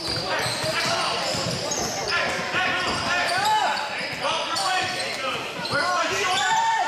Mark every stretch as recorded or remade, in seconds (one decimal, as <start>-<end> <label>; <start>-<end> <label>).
0.0-6.9 remade